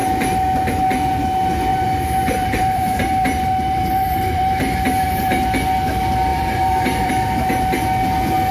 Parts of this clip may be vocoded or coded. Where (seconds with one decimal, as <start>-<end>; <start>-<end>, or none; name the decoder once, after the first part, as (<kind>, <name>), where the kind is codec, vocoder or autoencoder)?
1.7-5.4 (vocoder, BigVGAN v2); 6.3-7.1